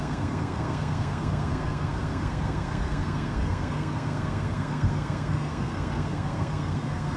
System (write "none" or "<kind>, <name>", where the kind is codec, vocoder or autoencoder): codec, SNAC